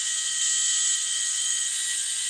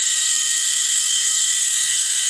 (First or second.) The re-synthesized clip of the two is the second